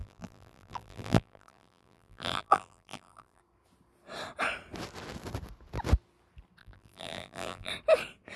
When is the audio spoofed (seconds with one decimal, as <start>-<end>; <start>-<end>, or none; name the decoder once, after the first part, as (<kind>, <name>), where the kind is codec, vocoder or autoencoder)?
0.0-3.4 (vocoder, BigVGAN v2); 6.6-7.7